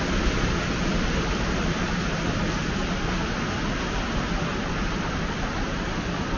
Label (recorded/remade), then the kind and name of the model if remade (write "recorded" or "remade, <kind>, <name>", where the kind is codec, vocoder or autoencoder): recorded